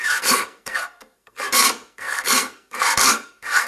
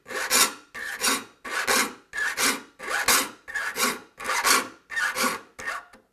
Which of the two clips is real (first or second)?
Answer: second